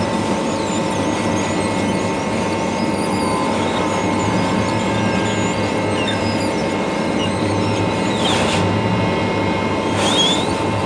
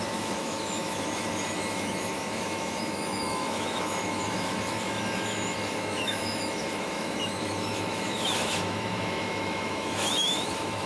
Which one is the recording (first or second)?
first